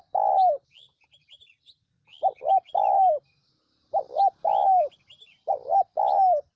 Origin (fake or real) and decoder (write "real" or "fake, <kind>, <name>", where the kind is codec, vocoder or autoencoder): real